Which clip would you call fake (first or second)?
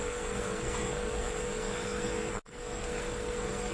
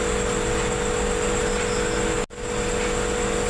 first